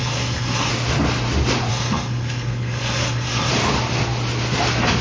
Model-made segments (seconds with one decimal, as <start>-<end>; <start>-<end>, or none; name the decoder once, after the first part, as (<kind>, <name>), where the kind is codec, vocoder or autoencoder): 0.0-0.7 (codec, SNAC); 1.7-3.5